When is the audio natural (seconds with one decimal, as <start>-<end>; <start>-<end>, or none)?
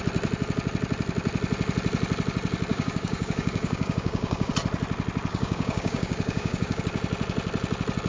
0.0-2.7; 4.5-5.3; 6.8-8.1